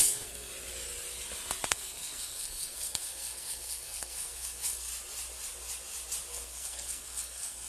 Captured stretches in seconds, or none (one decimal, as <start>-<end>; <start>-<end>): 0.5-1.7; 4.9-6.3